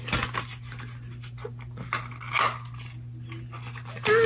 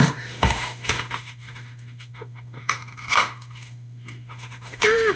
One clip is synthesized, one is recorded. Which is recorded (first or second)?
first